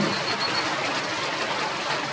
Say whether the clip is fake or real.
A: real